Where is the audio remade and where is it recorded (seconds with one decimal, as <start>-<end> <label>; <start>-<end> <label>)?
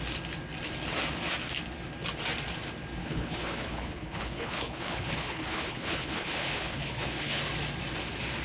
0.0-3.0 recorded; 3.0-7.4 remade; 7.4-8.4 recorded